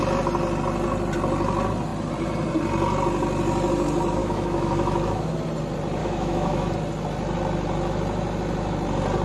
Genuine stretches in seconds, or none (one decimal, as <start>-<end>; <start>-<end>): 0.0-4.2; 5.4-6.0; 6.7-9.2